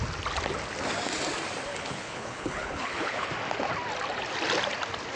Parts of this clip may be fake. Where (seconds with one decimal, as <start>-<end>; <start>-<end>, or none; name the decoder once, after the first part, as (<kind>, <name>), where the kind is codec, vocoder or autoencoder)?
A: 1.7-3.3 (codec, HILCodec)